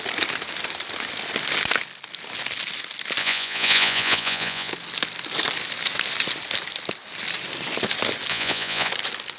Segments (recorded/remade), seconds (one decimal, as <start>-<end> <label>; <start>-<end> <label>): 0.0-3.2 recorded; 3.2-4.7 remade; 4.7-8.3 recorded; 8.3-8.9 remade; 8.9-9.4 recorded